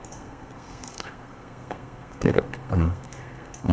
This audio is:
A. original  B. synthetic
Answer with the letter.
B